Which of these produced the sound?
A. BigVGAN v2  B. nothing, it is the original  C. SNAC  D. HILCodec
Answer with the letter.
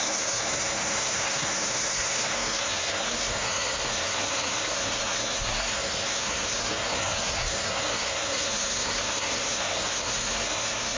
C